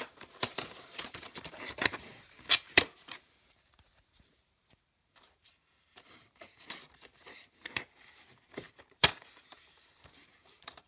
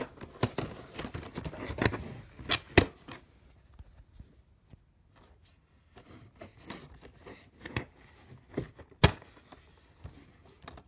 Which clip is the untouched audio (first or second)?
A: second